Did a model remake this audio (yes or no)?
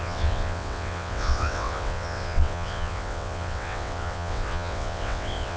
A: yes